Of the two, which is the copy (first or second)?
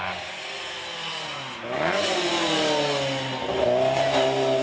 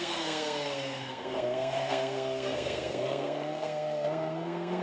second